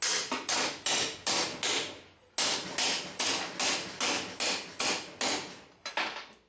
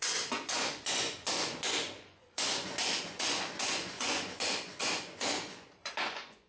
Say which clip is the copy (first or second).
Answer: second